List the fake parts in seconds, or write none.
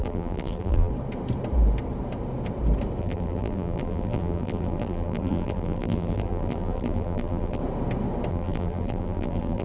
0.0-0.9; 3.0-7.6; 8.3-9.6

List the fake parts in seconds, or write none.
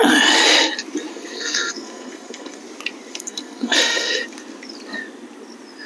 1.1-2.6; 3.1-4.2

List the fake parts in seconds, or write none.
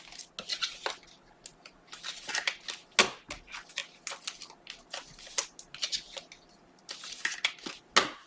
none